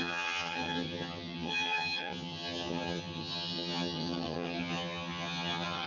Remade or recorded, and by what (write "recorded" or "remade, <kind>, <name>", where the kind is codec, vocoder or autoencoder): remade, vocoder, HiFi-GAN